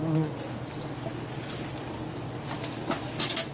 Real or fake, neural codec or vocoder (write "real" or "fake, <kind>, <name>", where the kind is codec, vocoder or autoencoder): real